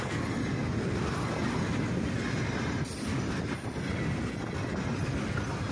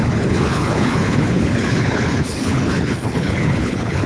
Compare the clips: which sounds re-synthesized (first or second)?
second